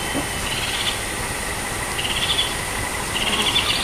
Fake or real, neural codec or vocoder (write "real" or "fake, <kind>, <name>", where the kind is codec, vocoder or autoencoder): real